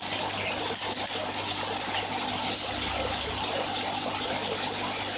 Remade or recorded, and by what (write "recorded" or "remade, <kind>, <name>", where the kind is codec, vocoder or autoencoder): recorded